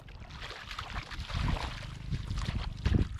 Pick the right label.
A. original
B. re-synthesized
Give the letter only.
A